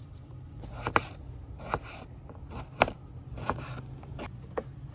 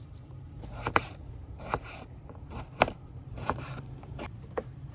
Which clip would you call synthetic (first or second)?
second